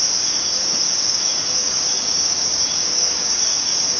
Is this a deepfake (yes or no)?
yes